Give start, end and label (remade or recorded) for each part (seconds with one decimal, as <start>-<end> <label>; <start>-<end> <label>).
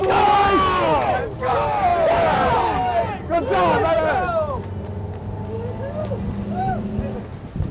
0.0-7.7 recorded